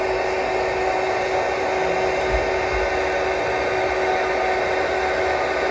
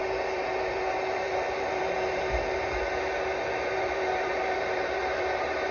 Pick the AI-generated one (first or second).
second